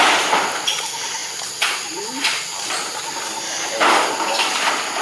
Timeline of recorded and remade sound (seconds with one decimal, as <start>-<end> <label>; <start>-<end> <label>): 0.0-5.0 recorded